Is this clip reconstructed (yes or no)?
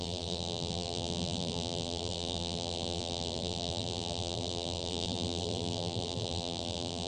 yes